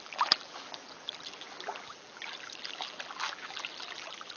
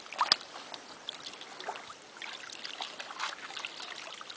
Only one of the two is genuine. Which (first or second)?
second